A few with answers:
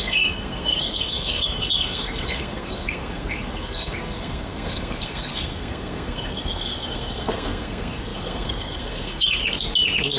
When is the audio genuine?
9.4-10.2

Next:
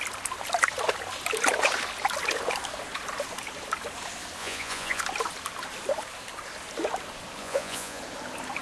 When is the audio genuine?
0.0-4.4; 5.0-7.4; 8.0-8.6

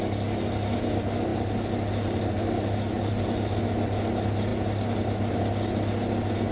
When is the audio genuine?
0.0-6.5